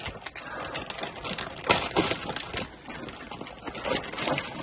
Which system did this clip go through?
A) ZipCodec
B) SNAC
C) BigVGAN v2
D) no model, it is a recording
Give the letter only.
D